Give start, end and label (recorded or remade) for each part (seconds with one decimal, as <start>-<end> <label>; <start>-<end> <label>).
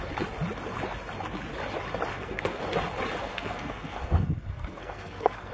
0.0-2.1 recorded; 2.1-2.6 remade; 2.6-3.2 recorded; 3.2-5.5 remade